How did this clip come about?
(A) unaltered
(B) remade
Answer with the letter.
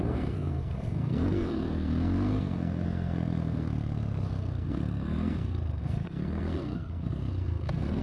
B